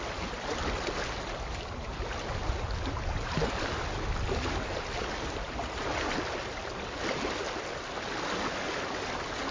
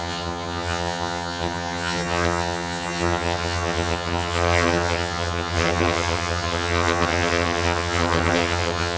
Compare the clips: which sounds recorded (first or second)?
first